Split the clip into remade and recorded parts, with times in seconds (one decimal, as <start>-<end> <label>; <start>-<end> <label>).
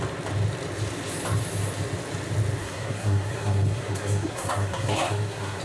0.0-2.6 recorded; 2.6-5.6 remade